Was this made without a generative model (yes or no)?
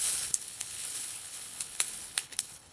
no